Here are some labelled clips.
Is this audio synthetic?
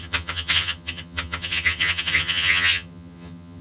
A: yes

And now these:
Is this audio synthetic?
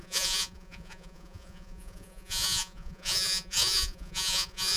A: yes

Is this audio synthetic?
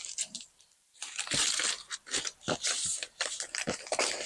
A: yes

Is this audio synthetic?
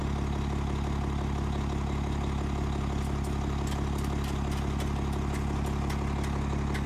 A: no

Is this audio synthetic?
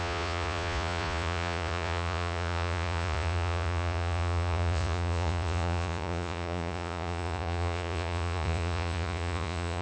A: yes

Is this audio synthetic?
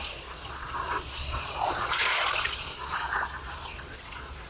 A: yes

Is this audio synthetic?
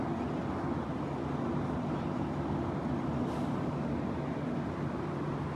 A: no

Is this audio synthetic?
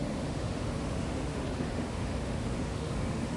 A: yes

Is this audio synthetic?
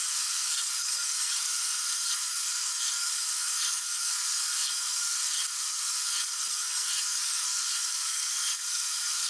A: yes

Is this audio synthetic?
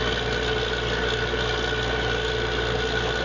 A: no